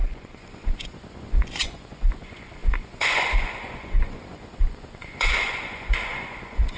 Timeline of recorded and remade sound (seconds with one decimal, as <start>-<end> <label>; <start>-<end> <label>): 0.0-6.8 remade